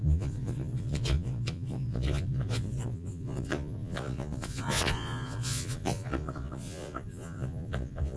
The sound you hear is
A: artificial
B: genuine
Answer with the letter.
A